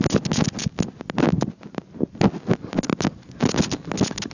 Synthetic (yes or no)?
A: no